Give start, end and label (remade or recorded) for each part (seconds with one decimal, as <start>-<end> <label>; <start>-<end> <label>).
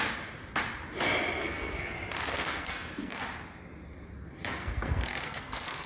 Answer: 0.0-1.4 recorded; 1.4-1.9 remade; 1.9-2.3 recorded; 2.3-3.2 remade; 3.2-4.6 recorded; 4.6-5.9 remade